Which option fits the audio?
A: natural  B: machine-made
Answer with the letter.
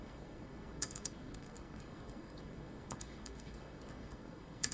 B